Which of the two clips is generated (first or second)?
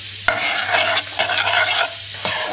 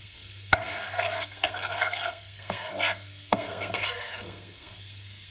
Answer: second